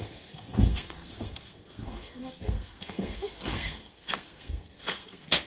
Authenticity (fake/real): fake